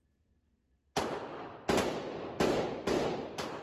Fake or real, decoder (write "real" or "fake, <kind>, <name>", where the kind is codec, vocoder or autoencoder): real